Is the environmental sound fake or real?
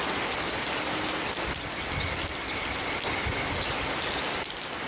real